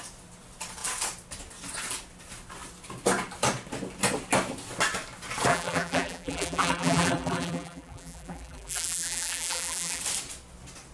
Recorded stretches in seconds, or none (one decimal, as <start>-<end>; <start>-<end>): 0.0-5.5; 10.0-10.9